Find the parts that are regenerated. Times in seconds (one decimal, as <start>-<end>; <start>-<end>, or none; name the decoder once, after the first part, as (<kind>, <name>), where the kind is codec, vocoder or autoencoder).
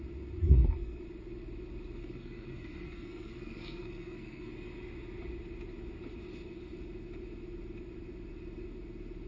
0.4-1.0 (codec, SNAC); 2.0-4.5